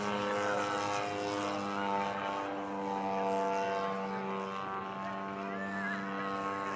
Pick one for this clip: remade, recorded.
recorded